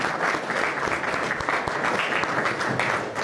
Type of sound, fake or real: real